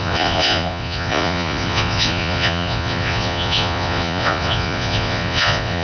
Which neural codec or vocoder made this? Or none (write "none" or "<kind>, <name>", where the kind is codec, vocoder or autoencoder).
vocoder, Vocos